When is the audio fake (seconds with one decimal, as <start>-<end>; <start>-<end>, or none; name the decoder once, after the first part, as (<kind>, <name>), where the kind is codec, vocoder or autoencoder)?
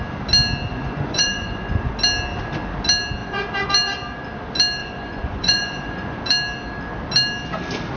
0.7-1.9 (vocoder, Vocos); 3.2-3.7; 4.8-6.2